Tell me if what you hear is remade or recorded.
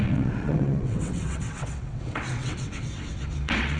remade